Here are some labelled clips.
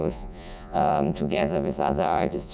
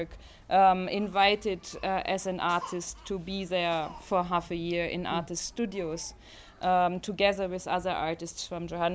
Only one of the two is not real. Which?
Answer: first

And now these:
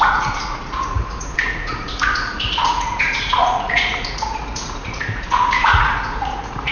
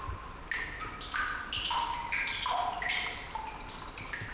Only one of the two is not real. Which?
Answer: first